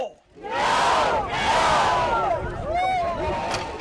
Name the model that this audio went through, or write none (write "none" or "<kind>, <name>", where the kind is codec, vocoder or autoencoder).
none